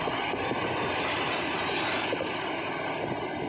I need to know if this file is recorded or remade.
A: recorded